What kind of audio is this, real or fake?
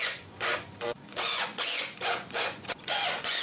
fake